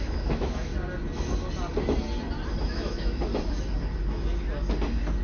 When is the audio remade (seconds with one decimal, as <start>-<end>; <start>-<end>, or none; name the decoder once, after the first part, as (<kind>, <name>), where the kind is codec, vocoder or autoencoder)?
0.0-0.7 (autoencoder, DAC-VAE); 2.6-3.3